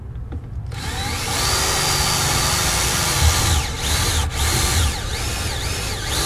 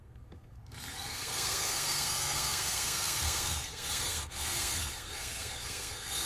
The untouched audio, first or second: first